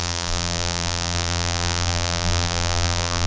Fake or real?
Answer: fake